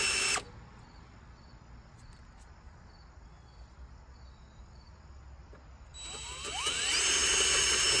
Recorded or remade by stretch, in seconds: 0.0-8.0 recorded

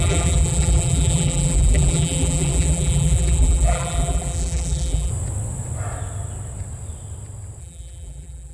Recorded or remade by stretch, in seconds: 0.0-5.1 remade; 5.1-7.6 recorded; 7.6-8.5 remade

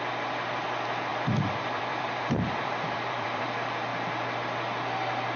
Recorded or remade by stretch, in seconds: 0.0-1.1 recorded; 1.1-3.4 remade; 3.4-5.4 recorded